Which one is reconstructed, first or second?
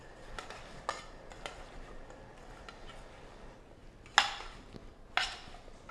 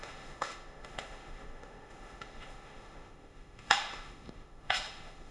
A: second